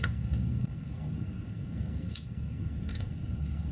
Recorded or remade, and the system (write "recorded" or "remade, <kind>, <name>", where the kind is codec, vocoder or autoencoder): remade, codec, SNAC